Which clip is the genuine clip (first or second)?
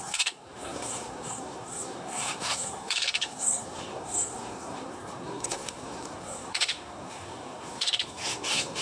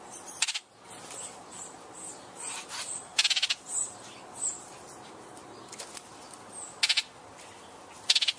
second